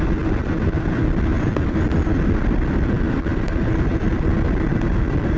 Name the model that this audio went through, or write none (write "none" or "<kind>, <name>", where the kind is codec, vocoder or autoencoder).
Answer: none